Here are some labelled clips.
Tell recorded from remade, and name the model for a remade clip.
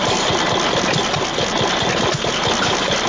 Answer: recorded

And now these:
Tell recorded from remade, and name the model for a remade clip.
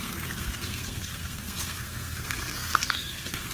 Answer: remade, codec, SNAC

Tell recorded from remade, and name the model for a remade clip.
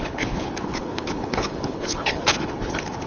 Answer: remade, codec, HILCodec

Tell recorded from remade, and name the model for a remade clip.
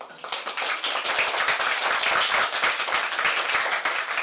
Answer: recorded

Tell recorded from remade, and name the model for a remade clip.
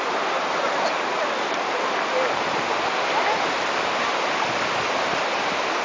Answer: recorded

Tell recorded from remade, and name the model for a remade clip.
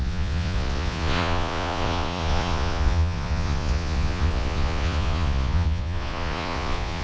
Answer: remade, vocoder, Vocos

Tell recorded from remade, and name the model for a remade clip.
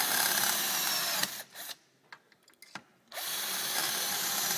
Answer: recorded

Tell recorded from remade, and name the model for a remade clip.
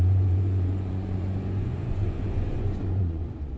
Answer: remade, vocoder, Vocos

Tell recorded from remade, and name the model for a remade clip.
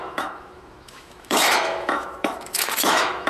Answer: remade, autoencoder, DAC-VAE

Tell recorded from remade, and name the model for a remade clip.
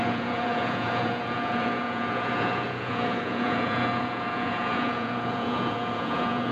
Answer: remade, vocoder, Vocos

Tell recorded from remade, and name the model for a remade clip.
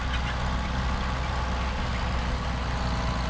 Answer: recorded